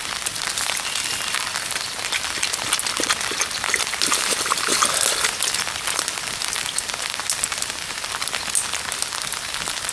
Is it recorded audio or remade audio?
recorded